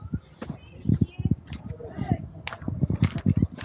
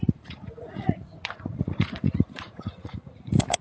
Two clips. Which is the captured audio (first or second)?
first